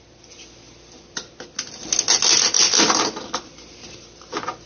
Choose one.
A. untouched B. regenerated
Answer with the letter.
A